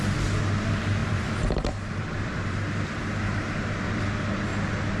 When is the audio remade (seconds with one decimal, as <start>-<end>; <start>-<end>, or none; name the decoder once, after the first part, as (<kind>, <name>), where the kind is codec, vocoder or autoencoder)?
1.0-4.0 (vocoder, BigVGAN v2)